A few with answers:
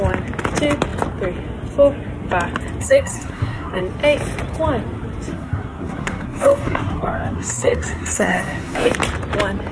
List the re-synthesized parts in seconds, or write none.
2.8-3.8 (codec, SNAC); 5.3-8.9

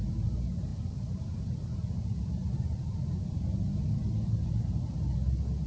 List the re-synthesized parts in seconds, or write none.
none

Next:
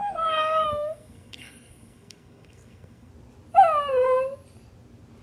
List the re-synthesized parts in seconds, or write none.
0.0-3.1 (codec, SNAC)